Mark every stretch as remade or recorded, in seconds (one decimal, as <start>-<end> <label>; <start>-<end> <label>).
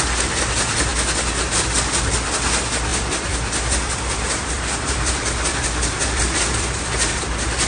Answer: 0.0-2.9 recorded; 2.9-7.7 remade